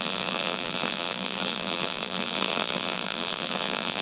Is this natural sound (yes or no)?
no